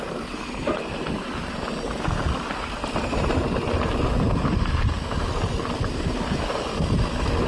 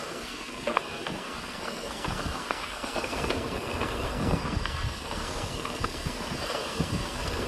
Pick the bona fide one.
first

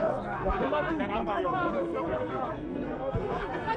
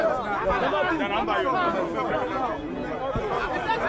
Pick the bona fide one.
second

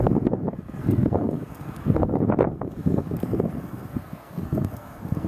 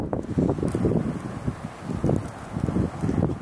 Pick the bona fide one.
second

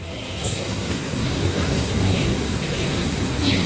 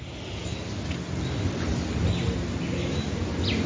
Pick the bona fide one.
second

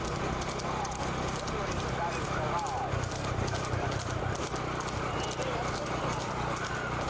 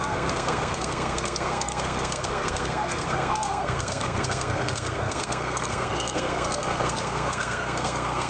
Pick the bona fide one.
first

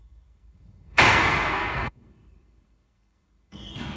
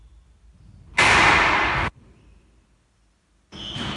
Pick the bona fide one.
second